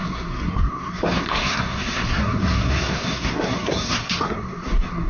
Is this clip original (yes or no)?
no